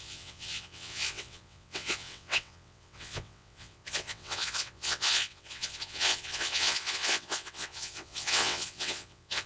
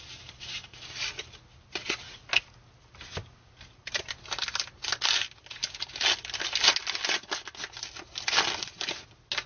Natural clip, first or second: second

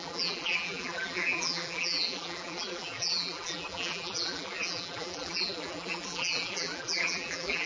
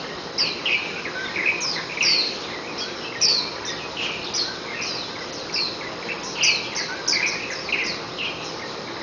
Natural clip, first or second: second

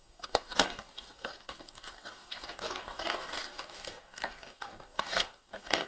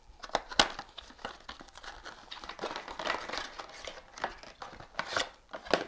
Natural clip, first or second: second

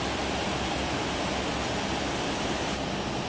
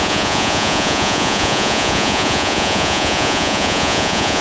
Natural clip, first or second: first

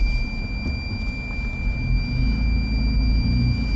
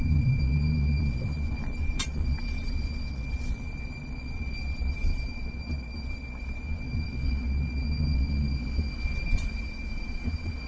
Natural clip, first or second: first